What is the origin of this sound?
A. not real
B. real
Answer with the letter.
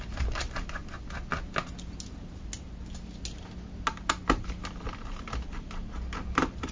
B